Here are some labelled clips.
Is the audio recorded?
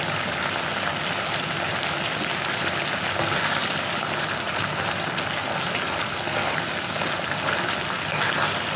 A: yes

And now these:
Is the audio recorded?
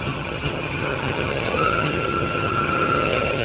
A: no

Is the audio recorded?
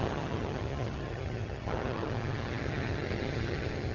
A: no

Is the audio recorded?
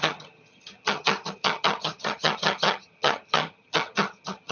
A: no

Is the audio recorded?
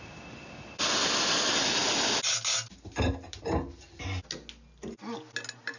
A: yes